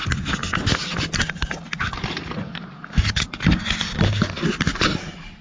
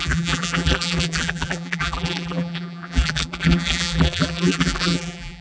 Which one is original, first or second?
first